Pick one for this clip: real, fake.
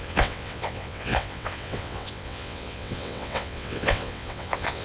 fake